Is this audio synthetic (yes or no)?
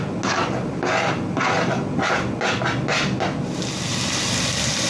no